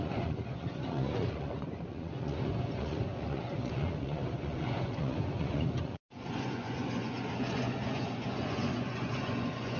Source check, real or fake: fake